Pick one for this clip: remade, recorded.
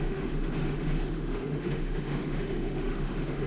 remade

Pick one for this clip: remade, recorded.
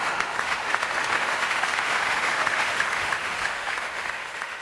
remade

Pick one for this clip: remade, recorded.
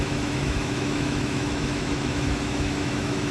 remade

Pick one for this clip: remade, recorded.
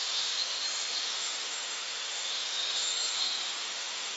remade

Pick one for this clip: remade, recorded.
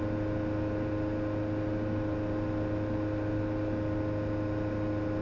recorded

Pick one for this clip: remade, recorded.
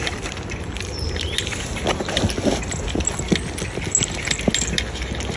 recorded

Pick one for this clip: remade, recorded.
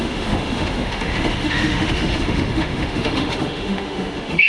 remade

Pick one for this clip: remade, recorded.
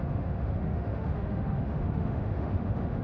remade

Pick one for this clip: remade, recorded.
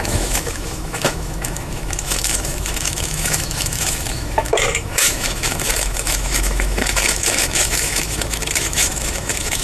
remade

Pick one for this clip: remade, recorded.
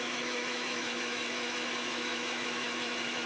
remade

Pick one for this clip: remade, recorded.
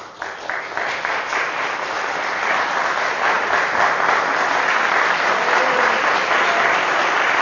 recorded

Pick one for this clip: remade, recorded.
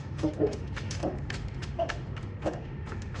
remade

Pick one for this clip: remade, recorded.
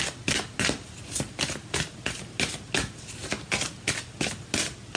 recorded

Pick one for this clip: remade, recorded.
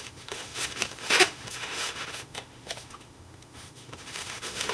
remade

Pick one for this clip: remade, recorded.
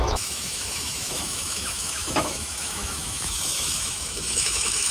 remade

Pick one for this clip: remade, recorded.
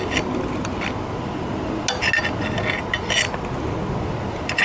recorded